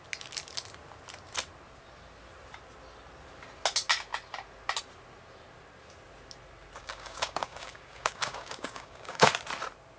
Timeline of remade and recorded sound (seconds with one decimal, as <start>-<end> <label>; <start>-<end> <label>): 0.0-6.8 recorded; 6.8-9.3 remade; 9.3-10.0 recorded